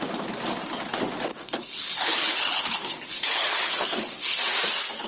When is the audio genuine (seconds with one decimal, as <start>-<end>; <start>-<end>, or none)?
0.0-1.3; 4.4-5.1